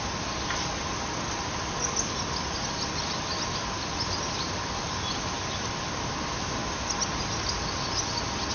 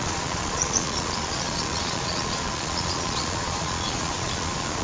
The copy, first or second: second